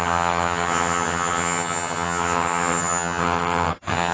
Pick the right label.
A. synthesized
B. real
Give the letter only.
A